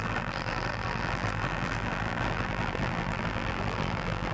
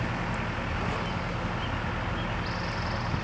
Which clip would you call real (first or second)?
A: second